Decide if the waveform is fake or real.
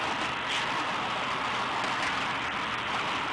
real